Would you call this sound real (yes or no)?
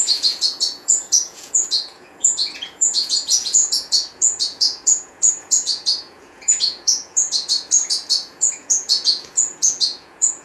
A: no